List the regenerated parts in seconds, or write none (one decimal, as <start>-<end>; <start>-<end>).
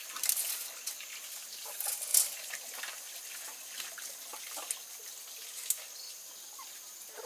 none